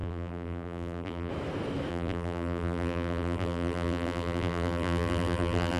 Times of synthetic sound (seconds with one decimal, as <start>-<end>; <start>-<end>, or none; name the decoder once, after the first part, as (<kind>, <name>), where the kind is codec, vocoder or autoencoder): 0.0-1.3 (vocoder, BigVGAN v2); 1.9-5.8